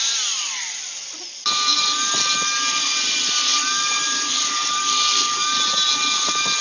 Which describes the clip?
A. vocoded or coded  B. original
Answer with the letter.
B